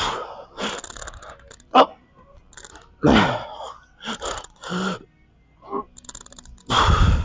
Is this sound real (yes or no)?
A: yes